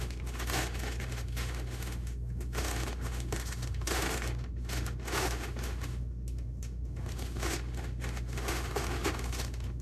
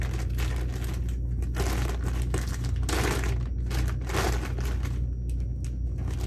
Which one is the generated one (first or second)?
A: first